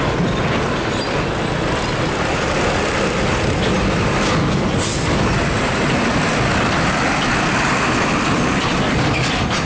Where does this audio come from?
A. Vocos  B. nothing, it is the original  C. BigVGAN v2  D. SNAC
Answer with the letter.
B